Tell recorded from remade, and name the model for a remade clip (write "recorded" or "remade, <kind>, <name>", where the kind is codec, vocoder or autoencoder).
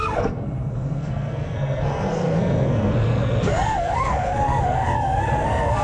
remade, codec, SNAC